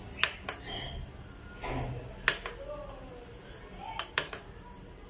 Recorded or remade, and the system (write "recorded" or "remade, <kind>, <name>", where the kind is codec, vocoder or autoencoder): recorded